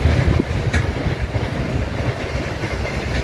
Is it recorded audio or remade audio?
recorded